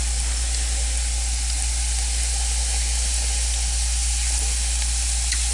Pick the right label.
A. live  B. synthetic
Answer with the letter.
A